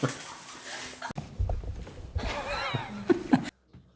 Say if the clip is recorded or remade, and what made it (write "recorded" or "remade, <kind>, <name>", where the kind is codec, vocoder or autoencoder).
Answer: recorded